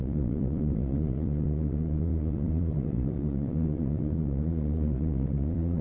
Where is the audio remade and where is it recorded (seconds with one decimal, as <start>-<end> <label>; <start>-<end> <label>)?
0.0-5.8 remade